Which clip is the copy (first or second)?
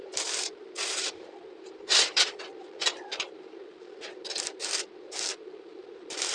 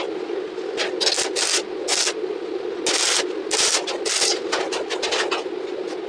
first